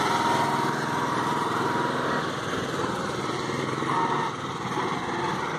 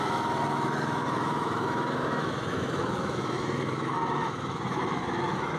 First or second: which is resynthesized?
second